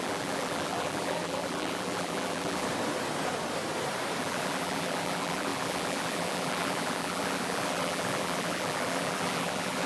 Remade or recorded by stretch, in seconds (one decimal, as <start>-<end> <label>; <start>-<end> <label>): 0.0-2.7 remade; 2.7-4.2 recorded; 4.2-9.9 remade